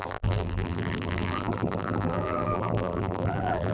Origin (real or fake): fake